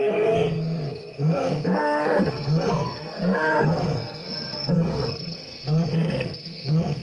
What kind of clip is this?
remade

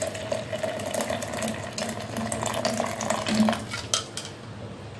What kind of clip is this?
recorded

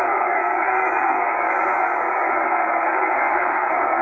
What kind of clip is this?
remade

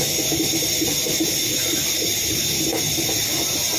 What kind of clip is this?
recorded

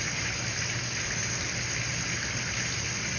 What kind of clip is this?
recorded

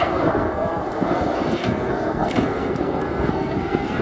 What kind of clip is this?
remade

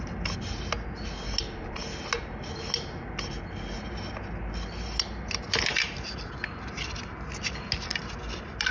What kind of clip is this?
recorded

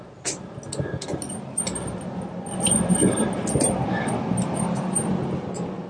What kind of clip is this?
recorded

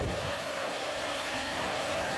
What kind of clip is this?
remade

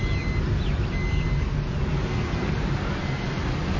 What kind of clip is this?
recorded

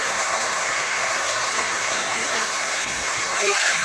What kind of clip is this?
remade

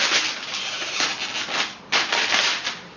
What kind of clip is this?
recorded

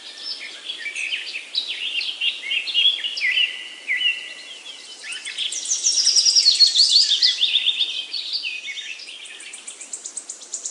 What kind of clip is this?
recorded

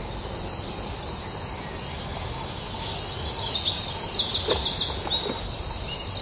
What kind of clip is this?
recorded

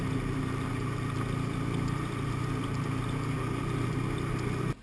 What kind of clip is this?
recorded